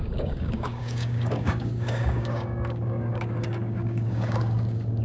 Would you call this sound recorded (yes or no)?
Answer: no